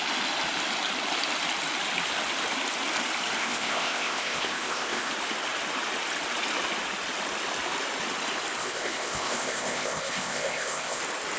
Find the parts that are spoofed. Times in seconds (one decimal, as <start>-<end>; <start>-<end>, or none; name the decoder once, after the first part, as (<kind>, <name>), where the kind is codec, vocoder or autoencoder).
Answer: 3.4-5.1 (codec, ZipCodec); 8.6-11.0